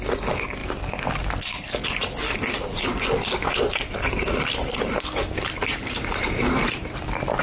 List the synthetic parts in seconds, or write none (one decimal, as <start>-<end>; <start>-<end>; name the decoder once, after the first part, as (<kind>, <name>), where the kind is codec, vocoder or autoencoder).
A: 5.7-7.0 (vocoder, BigVGAN v2)